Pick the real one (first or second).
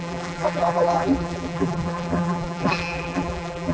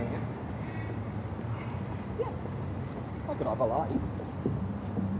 second